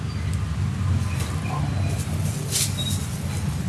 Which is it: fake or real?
real